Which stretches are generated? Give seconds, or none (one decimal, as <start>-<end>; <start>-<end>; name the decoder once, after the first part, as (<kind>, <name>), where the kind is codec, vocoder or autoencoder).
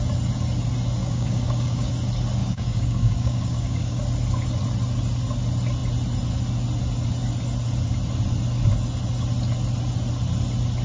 1.0-1.9 (codec, DAC); 2.4-4.0